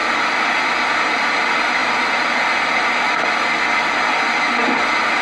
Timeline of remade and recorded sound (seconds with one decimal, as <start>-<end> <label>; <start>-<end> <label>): 0.0-5.2 recorded